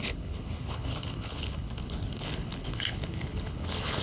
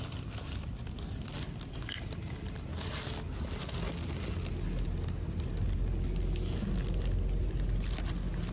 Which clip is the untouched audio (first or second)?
second